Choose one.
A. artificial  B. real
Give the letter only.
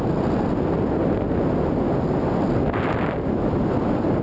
B